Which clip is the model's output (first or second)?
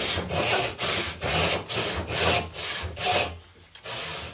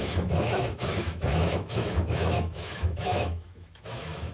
second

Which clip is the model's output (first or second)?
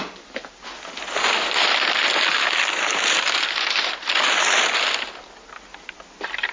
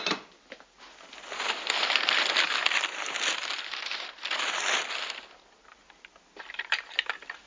second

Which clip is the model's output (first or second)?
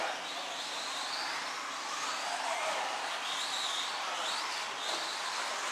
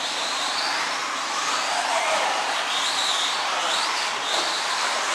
second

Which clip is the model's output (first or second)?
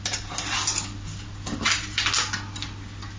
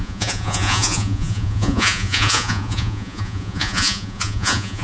second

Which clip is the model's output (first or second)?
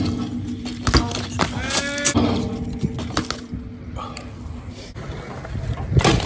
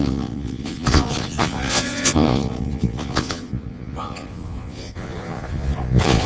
second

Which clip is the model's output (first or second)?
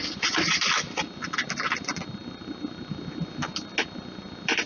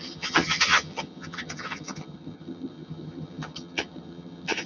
second